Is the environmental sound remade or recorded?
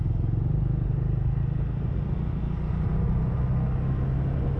recorded